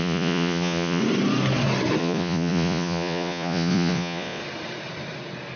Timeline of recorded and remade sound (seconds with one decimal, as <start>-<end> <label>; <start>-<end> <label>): 0.0-1.0 remade; 1.0-2.0 recorded; 2.0-4.4 remade; 4.4-5.6 recorded